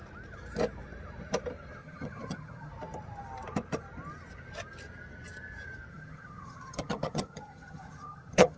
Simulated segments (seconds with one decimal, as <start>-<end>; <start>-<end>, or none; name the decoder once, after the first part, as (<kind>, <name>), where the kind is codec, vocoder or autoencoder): 1.8-2.7 (vocoder, HiFi-GAN); 5.9-8.6